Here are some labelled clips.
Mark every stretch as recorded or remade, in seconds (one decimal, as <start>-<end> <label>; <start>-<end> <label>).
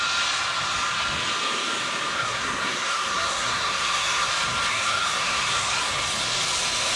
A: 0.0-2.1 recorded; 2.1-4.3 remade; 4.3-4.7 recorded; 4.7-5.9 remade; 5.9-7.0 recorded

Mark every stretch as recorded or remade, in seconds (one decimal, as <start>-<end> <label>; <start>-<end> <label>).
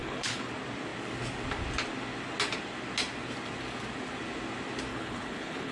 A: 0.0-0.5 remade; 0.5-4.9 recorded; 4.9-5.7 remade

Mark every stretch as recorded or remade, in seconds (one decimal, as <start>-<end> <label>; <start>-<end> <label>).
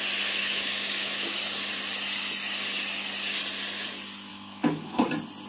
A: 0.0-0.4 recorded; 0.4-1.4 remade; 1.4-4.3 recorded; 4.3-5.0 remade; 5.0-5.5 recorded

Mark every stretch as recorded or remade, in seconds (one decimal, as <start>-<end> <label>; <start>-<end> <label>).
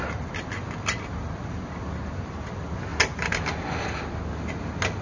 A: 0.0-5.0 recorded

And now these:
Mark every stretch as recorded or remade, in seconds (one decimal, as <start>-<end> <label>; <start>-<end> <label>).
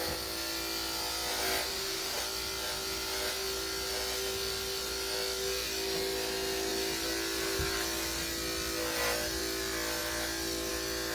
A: 0.0-1.7 recorded; 1.7-2.2 remade; 2.2-11.1 recorded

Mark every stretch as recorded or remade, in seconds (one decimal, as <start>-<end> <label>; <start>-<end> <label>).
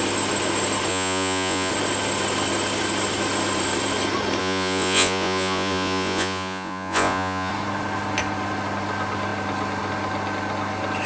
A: 0.0-0.9 recorded; 0.9-1.7 remade; 1.7-4.4 recorded; 4.4-7.5 remade; 7.5-11.1 recorded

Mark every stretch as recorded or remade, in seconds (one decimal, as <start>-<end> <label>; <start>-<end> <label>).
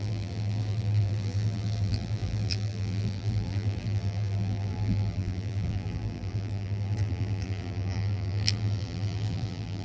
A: 0.0-9.8 remade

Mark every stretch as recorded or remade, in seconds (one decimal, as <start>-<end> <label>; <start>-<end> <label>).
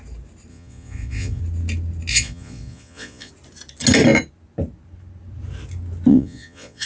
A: 0.0-0.5 recorded; 0.5-1.4 remade; 1.4-2.1 recorded; 2.1-3.3 remade; 3.3-6.1 recorded; 6.1-6.9 remade